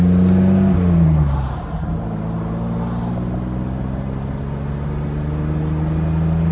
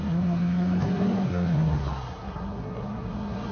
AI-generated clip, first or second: second